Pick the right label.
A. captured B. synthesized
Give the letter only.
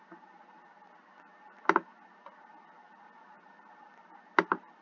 A